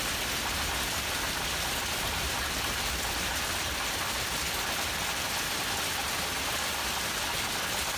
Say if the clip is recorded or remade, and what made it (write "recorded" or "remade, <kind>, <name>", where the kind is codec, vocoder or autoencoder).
recorded